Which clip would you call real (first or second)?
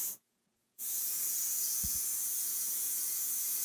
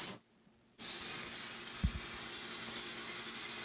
second